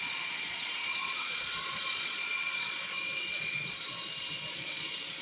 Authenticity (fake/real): fake